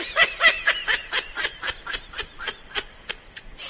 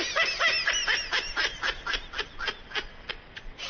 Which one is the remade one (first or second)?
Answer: first